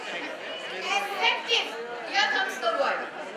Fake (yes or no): no